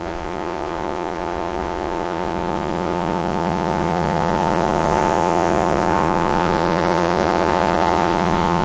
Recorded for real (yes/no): no